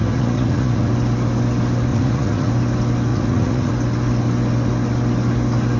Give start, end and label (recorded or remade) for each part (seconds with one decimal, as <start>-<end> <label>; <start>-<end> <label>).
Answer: 0.0-0.9 remade; 0.9-1.9 recorded; 1.9-2.5 remade; 2.5-3.1 recorded; 3.1-3.7 remade; 3.7-5.8 recorded